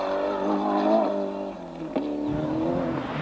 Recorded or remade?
recorded